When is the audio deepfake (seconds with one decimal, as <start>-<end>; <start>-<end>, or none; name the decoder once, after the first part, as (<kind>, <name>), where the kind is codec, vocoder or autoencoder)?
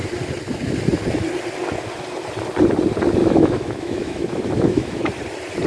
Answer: 3.2-5.1 (autoencoder, DAC-VAE)